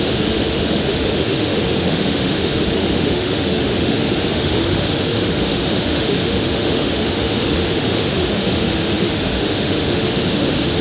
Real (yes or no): no